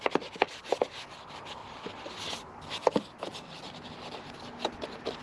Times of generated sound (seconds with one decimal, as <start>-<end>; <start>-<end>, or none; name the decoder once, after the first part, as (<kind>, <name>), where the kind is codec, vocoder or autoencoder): none